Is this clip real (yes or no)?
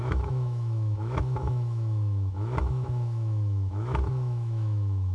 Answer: no